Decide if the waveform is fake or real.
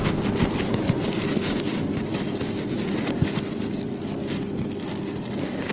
fake